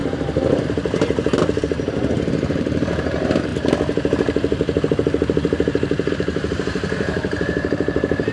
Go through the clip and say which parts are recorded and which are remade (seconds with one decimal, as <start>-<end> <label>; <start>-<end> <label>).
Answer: 0.0-3.5 remade; 3.5-6.1 recorded; 6.1-8.3 remade